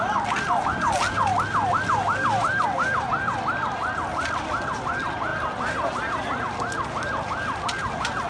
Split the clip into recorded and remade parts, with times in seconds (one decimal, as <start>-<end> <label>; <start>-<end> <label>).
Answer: 0.0-8.3 recorded